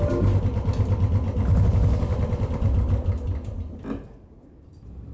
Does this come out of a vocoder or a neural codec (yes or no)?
no